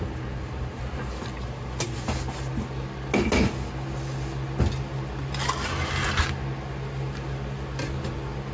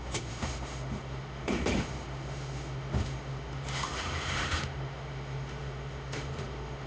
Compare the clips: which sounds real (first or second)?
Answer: first